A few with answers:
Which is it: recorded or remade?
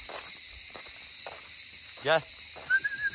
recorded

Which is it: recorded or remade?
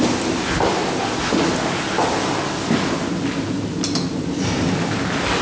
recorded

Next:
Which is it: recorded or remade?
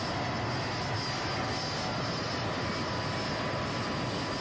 recorded